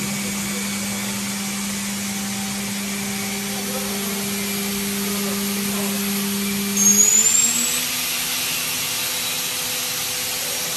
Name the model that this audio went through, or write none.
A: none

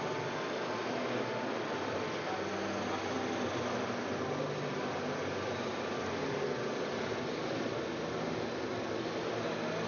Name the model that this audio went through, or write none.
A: none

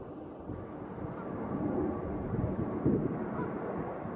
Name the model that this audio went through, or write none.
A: none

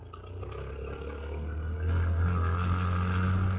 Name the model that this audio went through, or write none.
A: none